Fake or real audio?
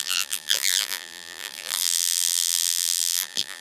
fake